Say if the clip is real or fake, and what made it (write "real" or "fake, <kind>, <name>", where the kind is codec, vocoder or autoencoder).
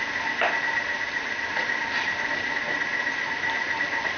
real